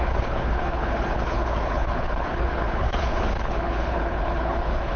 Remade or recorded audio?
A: remade